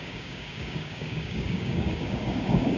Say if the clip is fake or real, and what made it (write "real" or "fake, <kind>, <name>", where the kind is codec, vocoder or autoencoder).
fake, codec, DAC